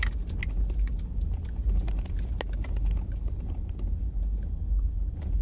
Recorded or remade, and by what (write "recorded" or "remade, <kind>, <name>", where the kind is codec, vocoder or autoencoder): recorded